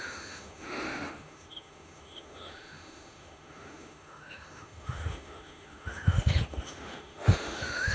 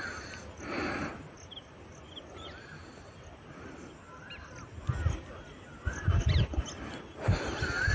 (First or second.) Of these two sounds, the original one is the second